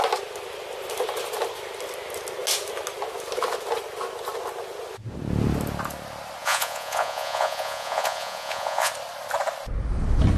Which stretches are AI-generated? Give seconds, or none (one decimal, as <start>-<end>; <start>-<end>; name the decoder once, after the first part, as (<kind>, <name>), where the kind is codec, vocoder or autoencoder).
6.4-8.9 (vocoder, Vocos)